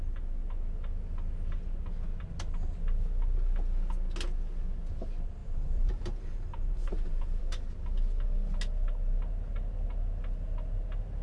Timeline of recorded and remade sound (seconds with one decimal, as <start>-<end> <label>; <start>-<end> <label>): 0.0-5.4 recorded; 5.4-7.4 remade; 7.4-11.2 recorded